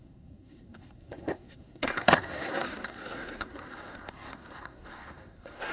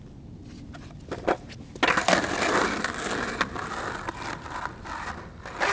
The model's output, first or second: first